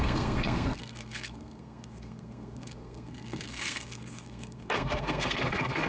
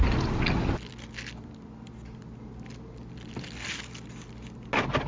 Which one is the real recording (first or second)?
second